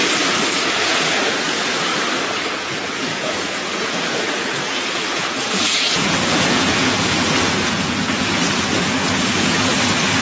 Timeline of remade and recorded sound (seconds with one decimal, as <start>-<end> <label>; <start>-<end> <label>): 0.0-0.7 recorded; 0.7-1.9 remade; 1.9-2.4 recorded; 2.4-10.2 remade